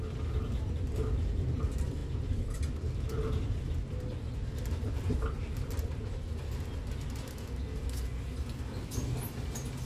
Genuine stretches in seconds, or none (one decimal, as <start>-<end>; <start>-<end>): 0.0-9.9